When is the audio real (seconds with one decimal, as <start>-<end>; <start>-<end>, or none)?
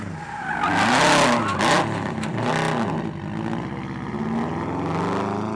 0.0-5.6